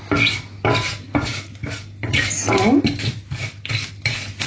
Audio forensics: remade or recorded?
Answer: recorded